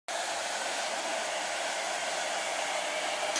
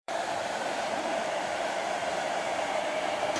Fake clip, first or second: second